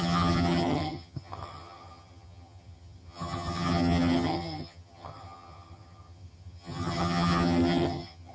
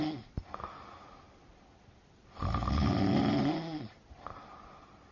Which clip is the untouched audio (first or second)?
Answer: second